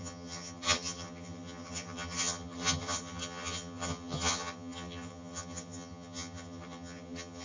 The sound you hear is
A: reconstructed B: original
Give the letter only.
A